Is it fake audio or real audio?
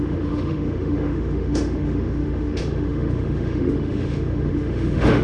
fake